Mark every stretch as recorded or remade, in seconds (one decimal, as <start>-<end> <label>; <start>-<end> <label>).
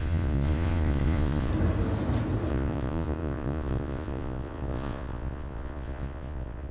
0.0-1.5 remade; 1.5-2.5 recorded; 2.5-6.7 remade